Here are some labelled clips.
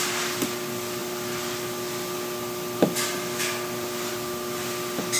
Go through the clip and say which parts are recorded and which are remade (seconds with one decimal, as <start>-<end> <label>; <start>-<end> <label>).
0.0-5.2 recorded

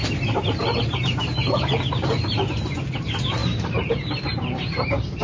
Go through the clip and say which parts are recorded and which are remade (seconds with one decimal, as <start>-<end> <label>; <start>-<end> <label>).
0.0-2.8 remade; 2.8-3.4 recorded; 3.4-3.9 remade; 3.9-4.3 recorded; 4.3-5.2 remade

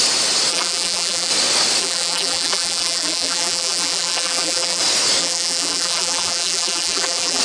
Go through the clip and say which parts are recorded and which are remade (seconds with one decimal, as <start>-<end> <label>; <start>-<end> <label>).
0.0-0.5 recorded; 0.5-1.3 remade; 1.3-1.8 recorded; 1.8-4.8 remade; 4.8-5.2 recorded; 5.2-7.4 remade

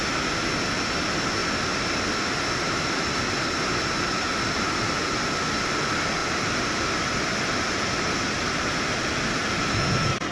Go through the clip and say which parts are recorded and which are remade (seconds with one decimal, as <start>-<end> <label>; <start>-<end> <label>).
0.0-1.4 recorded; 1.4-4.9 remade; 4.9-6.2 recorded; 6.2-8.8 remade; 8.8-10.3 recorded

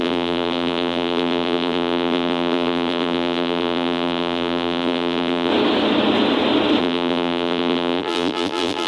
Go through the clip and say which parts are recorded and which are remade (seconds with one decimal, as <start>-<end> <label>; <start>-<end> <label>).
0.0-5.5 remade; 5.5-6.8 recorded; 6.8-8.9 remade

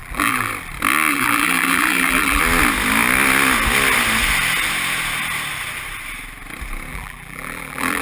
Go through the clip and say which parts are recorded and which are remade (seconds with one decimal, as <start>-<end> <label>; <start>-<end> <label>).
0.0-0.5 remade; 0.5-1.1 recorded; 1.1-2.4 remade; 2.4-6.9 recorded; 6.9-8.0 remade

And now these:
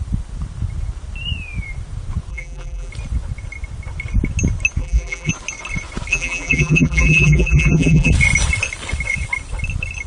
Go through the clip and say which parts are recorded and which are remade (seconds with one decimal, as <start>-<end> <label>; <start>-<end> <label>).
0.0-2.3 recorded; 2.3-2.9 remade; 2.9-4.8 recorded; 4.8-5.3 remade; 5.3-6.1 recorded; 6.1-8.1 remade; 8.1-10.1 recorded